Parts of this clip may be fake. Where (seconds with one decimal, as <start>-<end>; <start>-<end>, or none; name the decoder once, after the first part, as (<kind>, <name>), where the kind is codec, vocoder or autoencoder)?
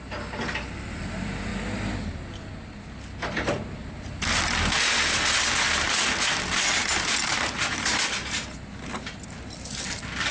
none